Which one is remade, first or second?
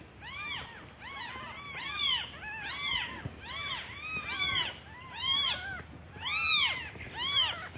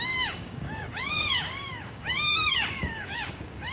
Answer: second